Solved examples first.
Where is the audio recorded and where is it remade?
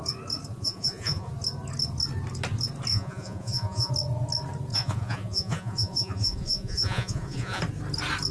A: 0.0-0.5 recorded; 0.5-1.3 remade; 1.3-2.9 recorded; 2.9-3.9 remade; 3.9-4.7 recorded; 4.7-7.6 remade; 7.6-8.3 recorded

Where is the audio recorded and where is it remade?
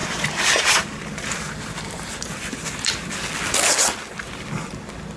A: 0.0-3.1 remade; 3.1-5.2 recorded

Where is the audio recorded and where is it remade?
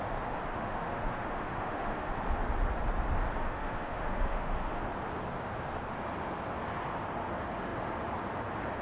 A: 0.0-0.5 recorded; 0.5-2.1 remade; 2.1-3.4 recorded; 3.4-4.8 remade; 4.8-8.8 recorded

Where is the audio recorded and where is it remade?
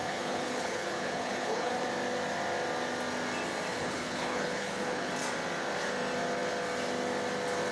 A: 0.0-1.7 remade; 1.7-3.7 recorded; 3.7-5.1 remade; 5.1-7.7 recorded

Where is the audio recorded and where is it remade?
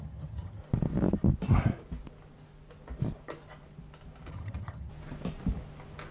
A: 0.0-0.6 remade; 0.6-4.3 recorded; 4.3-4.9 remade; 4.9-6.1 recorded